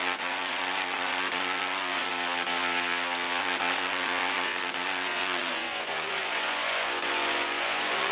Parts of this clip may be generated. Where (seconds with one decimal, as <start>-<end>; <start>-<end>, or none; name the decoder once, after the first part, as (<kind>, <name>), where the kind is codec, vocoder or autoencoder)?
0.0-2.1 (vocoder, Vocos); 3.4-8.1